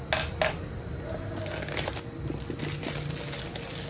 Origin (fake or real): real